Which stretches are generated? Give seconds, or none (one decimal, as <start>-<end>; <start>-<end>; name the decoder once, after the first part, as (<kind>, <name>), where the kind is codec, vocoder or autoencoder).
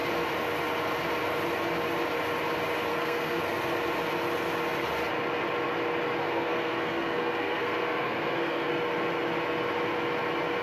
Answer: 2.9-3.4 (codec, SNAC); 6.2-8.7